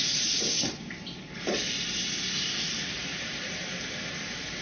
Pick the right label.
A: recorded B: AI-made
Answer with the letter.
B